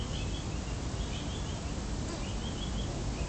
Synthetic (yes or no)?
no